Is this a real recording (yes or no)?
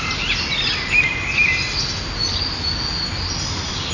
yes